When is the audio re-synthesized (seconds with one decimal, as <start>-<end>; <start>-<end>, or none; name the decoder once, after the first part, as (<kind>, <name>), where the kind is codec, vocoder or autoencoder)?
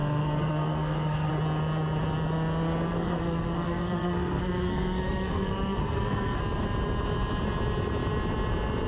0.0-1.3 (codec, SNAC); 2.9-6.4